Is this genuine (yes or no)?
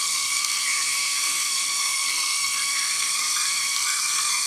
no